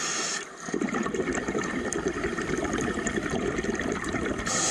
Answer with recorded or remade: recorded